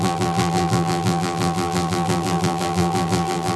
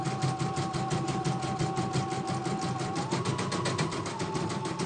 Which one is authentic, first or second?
second